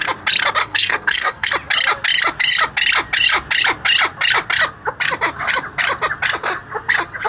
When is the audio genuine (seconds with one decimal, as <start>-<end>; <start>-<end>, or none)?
0.0-0.6; 1.5-7.3